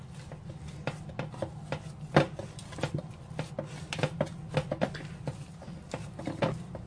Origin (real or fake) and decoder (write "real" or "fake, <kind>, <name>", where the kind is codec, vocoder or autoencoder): real